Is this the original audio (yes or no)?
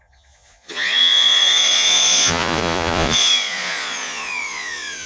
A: no